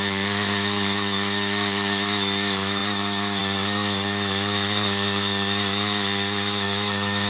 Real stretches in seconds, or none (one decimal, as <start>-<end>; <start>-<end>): none